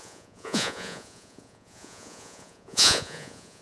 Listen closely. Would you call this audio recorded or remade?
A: remade